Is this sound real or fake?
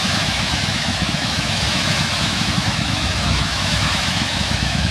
fake